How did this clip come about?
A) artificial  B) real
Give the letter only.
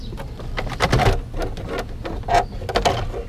B